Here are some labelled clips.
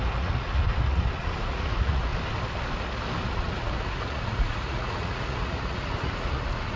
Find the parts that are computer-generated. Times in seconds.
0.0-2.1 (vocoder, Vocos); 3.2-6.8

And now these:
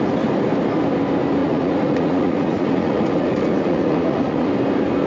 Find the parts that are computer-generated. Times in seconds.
1.4-4.5 (vocoder, Vocos)

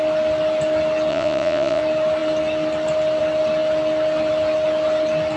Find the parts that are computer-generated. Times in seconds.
1.1-1.8 (vocoder, Vocos)

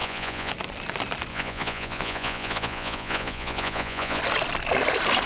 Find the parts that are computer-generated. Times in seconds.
0.0-0.5 (vocoder, Vocos); 1.3-4.2

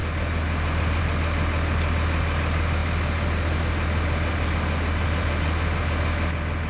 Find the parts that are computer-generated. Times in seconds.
none

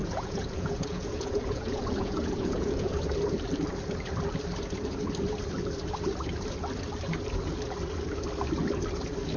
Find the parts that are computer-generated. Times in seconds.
0.0-3.0 (vocoder, Vocos)

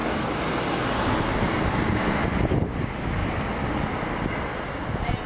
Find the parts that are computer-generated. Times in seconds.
none